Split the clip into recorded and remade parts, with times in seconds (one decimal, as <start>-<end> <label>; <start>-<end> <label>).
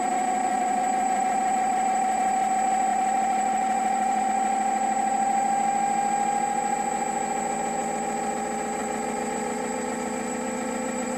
0.0-0.5 recorded; 0.5-2.5 remade; 2.5-2.9 recorded; 2.9-4.2 remade; 4.2-8.8 recorded; 8.8-11.2 remade